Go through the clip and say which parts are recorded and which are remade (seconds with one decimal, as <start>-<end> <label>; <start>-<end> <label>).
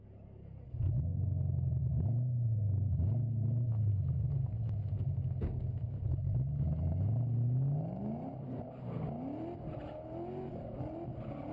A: 0.0-11.5 recorded